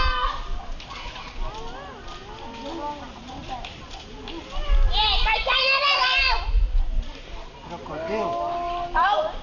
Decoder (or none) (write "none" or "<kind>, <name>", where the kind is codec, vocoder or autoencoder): none